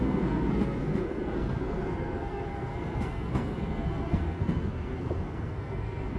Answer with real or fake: fake